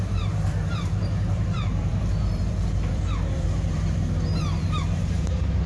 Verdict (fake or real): fake